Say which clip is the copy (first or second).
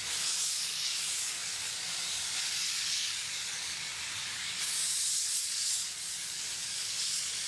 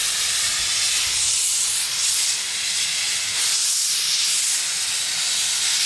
first